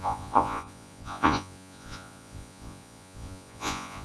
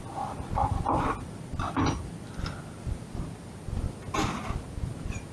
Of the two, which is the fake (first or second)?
first